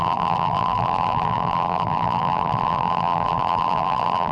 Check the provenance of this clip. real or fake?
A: fake